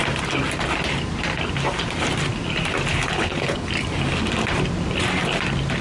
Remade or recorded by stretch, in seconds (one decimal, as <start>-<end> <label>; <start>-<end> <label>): 0.0-2.9 recorded; 2.9-3.7 remade; 3.7-5.8 recorded